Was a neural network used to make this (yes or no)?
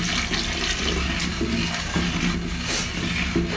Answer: no